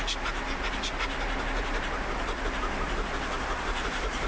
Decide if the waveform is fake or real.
real